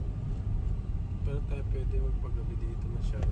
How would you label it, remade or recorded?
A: recorded